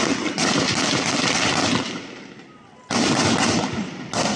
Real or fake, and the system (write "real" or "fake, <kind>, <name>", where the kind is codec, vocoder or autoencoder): real